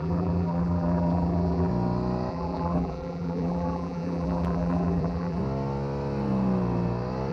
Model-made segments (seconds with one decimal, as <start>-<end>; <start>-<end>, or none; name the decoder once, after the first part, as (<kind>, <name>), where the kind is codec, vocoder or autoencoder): 0.0-1.7 (vocoder, BigVGAN v2); 2.3-5.4